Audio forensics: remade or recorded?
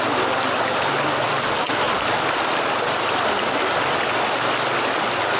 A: recorded